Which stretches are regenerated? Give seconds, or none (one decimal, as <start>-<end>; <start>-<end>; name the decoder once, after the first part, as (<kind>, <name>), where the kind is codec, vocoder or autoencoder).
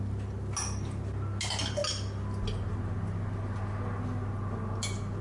none